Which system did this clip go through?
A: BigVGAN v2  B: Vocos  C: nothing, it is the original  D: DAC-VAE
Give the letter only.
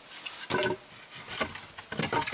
C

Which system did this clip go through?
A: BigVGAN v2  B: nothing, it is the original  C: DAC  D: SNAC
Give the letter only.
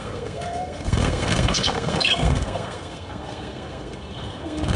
D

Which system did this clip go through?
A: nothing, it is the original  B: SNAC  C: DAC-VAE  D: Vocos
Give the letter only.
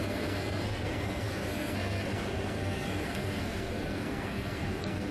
B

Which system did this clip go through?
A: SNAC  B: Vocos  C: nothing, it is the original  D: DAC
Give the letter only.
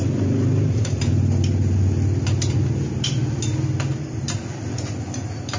C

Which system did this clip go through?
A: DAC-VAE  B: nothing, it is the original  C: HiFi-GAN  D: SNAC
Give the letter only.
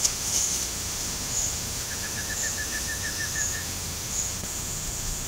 A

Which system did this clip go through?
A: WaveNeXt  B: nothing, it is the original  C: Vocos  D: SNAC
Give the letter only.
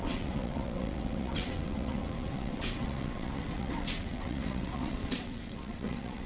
A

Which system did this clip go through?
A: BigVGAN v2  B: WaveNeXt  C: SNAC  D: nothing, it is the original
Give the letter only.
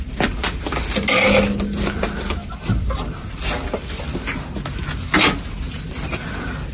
D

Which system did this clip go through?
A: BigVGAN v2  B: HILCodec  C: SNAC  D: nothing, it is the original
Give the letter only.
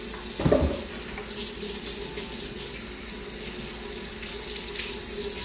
D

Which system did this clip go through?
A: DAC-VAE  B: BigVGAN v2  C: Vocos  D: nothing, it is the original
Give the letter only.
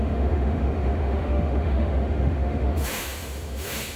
A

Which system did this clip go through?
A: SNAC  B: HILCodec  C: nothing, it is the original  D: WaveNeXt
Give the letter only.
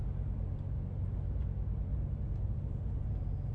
C